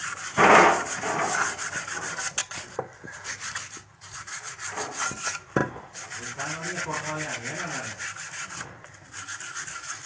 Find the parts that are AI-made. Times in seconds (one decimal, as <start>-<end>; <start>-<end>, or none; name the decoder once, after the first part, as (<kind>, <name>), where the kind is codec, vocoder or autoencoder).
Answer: 5.6-6.4 (vocoder, BigVGAN v2)